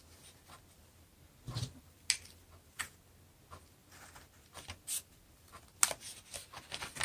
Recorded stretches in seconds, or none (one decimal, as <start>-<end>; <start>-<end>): 0.0-7.0